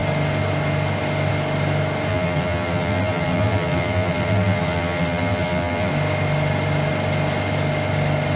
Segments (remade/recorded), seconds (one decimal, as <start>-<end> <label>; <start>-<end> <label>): 0.0-2.1 recorded; 2.1-5.9 remade; 5.9-8.4 recorded